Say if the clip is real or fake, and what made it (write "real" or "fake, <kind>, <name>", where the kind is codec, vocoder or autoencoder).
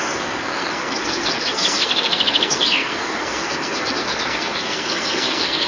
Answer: fake, codec, SNAC